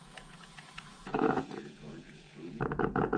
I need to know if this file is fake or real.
fake